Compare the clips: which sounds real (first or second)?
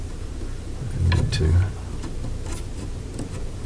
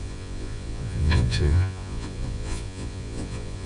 first